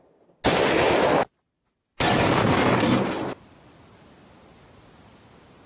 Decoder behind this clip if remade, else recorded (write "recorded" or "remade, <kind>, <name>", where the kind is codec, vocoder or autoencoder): recorded